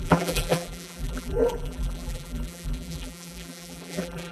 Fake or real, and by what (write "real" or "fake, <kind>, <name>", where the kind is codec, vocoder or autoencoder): fake, vocoder, BigVGAN v2